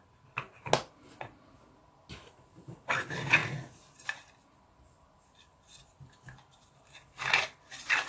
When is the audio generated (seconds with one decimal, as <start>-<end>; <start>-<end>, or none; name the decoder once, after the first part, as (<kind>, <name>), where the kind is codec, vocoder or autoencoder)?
none